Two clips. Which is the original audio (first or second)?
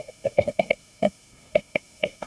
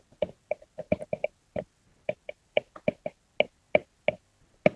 second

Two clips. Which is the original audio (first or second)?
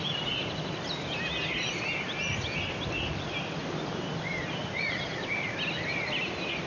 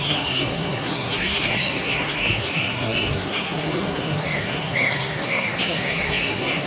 first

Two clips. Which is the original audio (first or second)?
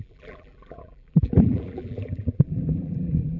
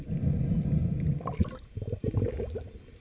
second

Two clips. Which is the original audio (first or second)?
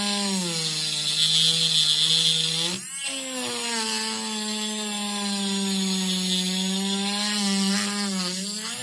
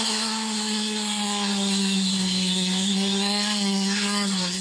first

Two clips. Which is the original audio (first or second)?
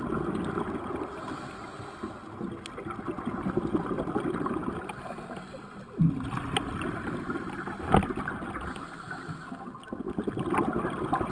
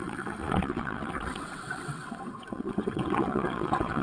first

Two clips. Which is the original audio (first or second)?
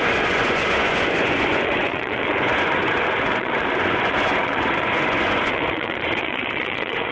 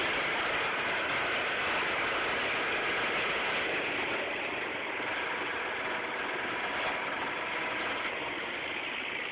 second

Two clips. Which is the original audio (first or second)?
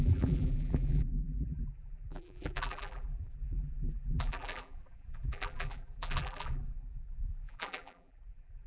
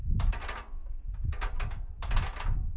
second